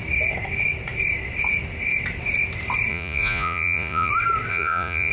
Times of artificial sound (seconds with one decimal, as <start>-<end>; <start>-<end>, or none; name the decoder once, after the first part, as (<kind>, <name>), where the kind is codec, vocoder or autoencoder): 2.9-4.1 (vocoder, Vocos); 4.5-5.1